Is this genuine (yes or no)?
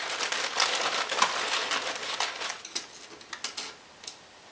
yes